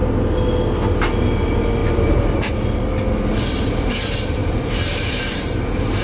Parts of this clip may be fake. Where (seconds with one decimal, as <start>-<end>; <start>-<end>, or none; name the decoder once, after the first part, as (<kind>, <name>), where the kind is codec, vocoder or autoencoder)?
1.8-2.5 (vocoder, BigVGAN v2); 4.4-6.0